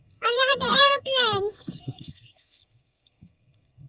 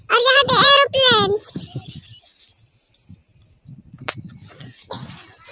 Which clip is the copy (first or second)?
first